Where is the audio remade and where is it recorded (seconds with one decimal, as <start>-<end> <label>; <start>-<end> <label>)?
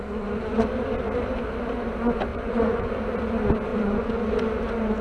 0.0-2.3 recorded; 2.3-2.9 remade; 2.9-3.7 recorded; 3.7-4.2 remade; 4.2-5.0 recorded